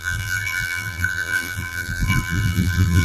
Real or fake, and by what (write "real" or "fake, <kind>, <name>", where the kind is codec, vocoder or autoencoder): fake, vocoder, BigVGAN v2